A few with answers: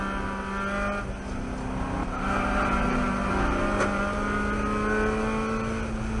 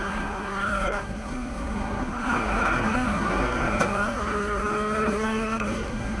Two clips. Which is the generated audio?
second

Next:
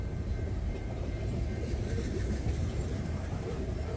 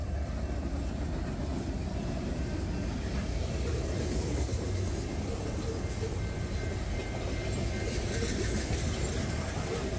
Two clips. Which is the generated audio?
first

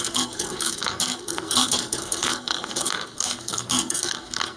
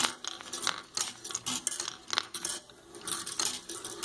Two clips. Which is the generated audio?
first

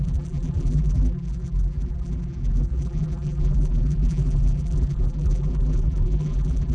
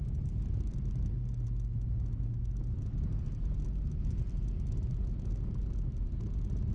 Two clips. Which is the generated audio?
first